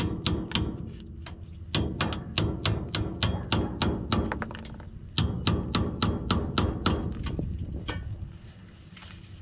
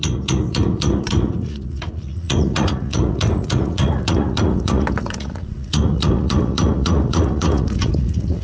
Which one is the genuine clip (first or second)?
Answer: first